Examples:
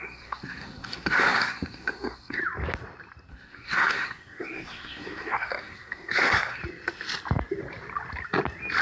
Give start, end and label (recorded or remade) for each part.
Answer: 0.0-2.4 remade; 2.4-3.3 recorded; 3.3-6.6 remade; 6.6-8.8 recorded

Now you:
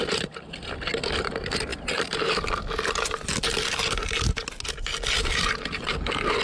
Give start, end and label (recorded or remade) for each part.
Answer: 0.0-6.4 recorded

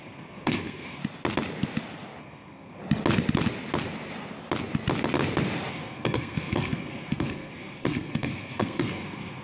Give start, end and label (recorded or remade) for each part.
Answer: 0.0-1.0 remade; 1.0-2.2 recorded; 2.2-2.8 remade; 2.8-5.7 recorded; 5.7-9.4 remade

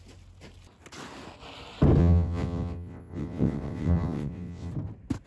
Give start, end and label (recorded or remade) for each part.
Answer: 0.0-2.0 recorded; 2.0-4.7 remade; 4.7-5.3 recorded

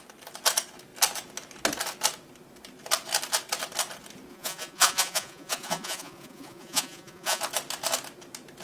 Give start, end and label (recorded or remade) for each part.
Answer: 0.0-4.3 recorded; 4.3-7.4 remade; 7.4-8.6 recorded

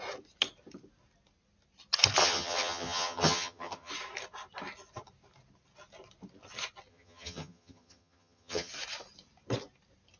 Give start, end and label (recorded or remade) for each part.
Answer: 0.0-2.2 recorded; 2.2-3.9 remade; 3.9-6.9 recorded; 6.9-8.7 remade; 8.7-10.2 recorded

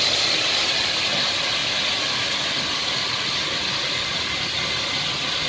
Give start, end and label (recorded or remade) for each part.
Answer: 0.0-5.5 recorded